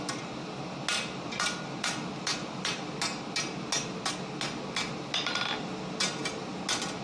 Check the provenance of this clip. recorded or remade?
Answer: recorded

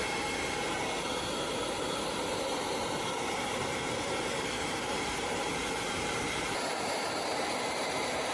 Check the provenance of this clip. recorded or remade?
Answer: remade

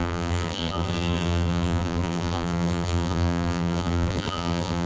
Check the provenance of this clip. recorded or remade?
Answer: remade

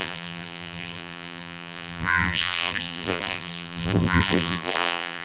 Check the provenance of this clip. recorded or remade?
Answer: remade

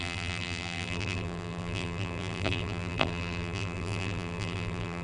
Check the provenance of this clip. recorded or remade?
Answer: remade